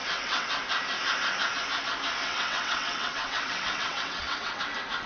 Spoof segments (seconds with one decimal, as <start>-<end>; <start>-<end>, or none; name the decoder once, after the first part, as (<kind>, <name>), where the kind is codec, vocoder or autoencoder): 0.0-0.5 (vocoder, WaveNeXt); 2.2-4.6